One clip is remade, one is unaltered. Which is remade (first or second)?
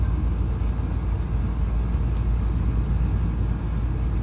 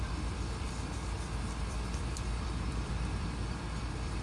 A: second